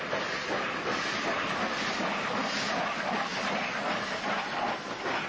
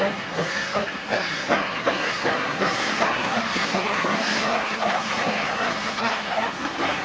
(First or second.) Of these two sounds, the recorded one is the first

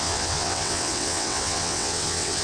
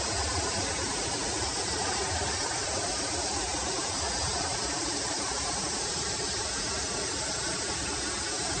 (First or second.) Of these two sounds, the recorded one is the second